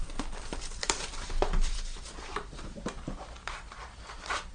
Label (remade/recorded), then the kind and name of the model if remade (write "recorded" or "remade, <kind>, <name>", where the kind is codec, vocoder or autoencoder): remade, vocoder, BigVGAN v2